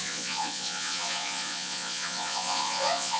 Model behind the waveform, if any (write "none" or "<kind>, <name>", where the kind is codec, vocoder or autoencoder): vocoder, Vocos